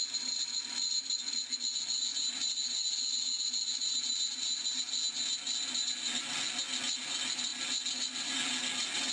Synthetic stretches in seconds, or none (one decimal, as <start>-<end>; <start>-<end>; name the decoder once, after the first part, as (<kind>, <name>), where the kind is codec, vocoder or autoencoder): none